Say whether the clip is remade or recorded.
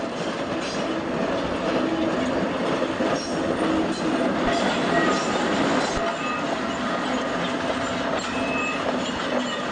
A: recorded